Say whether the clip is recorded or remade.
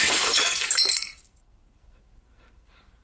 remade